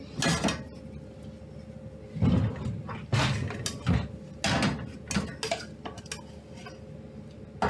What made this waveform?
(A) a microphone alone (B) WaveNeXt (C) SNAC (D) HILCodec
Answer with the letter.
A